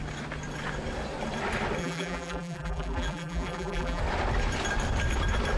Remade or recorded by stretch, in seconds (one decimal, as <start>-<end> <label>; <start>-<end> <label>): 0.0-1.8 recorded; 1.8-4.0 remade; 4.0-5.6 recorded